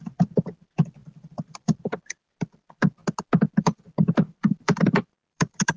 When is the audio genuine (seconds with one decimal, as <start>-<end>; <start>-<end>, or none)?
3.0-3.6